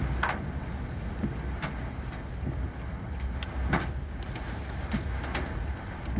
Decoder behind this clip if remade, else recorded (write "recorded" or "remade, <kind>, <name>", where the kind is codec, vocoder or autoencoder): recorded